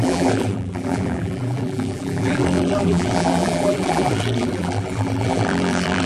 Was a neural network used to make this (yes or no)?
yes